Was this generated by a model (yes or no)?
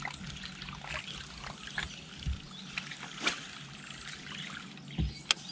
no